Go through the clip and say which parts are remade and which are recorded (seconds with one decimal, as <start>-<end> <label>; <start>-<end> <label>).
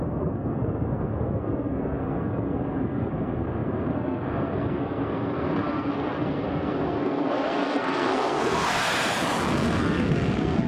0.0-8.9 remade; 8.9-9.5 recorded; 9.5-10.7 remade